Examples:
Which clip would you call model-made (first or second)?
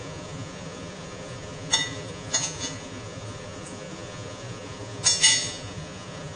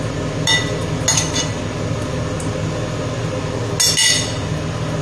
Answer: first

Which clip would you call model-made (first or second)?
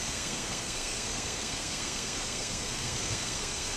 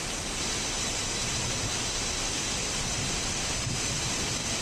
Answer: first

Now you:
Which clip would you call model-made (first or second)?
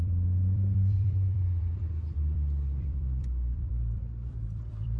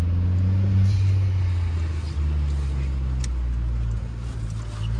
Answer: first